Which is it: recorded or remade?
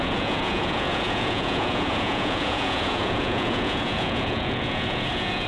remade